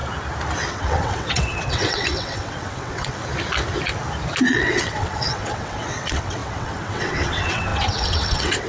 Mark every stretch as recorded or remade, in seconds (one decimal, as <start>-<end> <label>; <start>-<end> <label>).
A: 0.0-0.7 recorded; 0.7-3.2 remade; 3.2-4.5 recorded; 4.5-8.7 remade